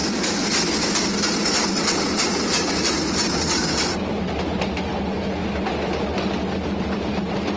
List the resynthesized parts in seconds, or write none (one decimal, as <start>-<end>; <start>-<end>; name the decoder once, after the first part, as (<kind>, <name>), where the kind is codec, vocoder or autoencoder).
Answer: none